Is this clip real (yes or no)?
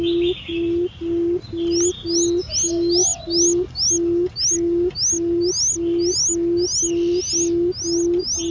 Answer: yes